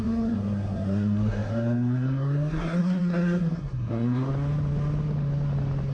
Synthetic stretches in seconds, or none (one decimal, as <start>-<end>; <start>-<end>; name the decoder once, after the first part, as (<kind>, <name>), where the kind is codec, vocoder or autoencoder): 0.0-4.3 (codec, SNAC)